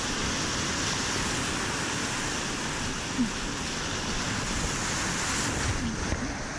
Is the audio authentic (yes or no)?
yes